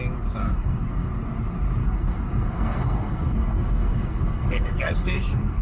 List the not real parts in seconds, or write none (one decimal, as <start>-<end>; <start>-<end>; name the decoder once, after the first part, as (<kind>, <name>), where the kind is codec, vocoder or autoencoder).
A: 0.4-1.1 (codec, SNAC); 1.8-5.6